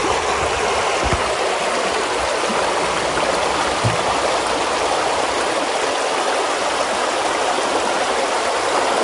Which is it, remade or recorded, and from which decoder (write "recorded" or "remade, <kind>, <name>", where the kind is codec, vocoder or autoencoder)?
recorded